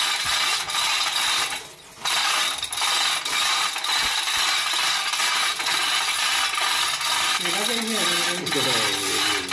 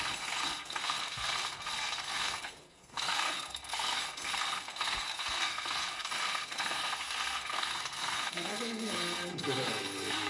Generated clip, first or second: second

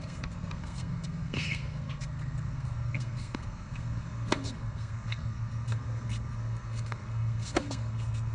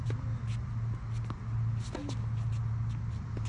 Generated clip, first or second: first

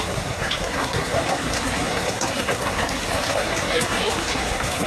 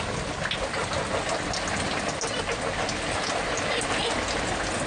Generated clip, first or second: first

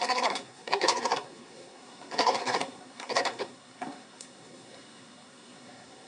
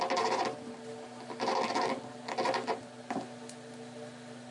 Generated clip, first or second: first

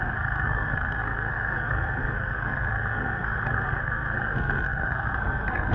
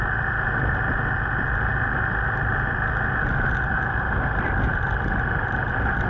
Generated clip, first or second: first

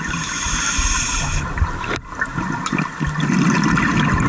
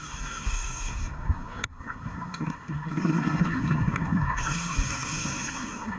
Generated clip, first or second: second